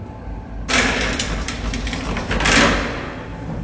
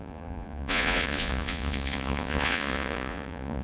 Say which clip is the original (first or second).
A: first